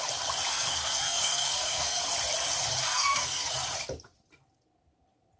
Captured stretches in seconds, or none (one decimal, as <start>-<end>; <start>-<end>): 0.0-0.5; 2.0-2.8; 3.5-5.4